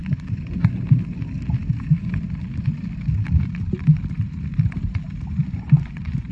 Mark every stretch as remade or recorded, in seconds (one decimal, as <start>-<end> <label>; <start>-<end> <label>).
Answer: 0.0-1.0 remade; 1.0-4.5 recorded; 4.5-6.3 remade